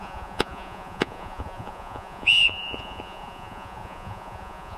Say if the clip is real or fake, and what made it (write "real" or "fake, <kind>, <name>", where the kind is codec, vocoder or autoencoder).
fake, vocoder, Vocos